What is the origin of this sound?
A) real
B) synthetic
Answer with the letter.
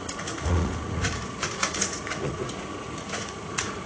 B